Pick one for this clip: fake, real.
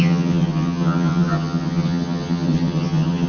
fake